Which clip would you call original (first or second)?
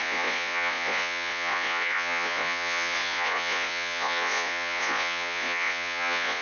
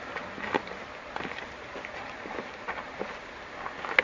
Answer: second